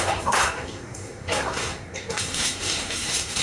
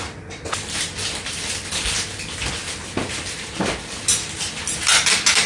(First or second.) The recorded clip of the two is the second